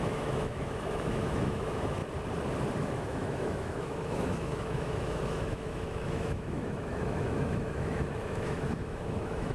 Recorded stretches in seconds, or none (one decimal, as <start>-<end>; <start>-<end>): 2.0-2.8